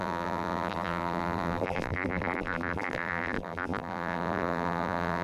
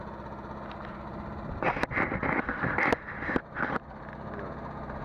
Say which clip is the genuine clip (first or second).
second